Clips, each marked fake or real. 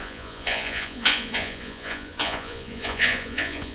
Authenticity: fake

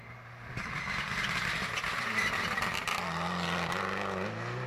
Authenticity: real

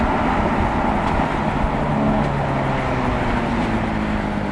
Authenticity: real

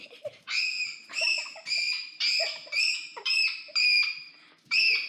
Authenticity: fake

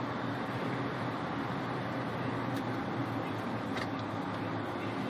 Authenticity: real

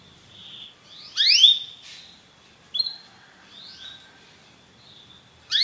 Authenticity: real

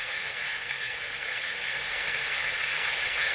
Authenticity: fake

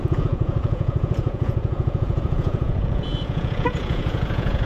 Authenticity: fake